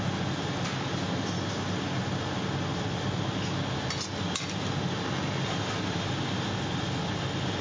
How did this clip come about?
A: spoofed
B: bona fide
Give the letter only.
B